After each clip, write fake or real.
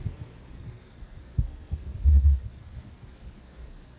fake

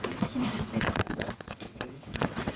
fake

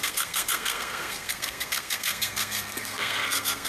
fake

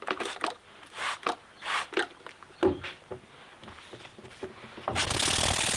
real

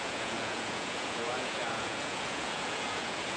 fake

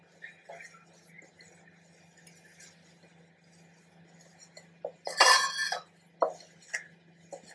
real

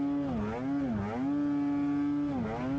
real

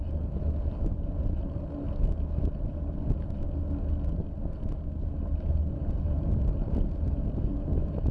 real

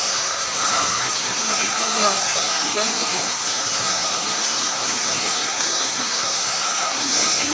fake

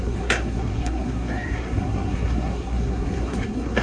fake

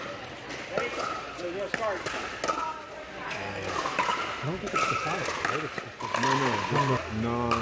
real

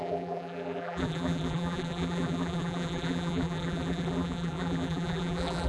fake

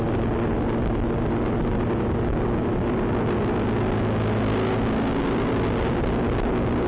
real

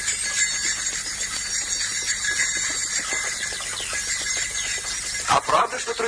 real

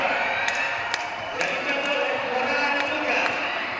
fake